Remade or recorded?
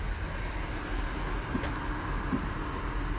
recorded